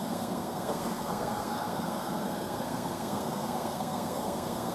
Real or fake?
fake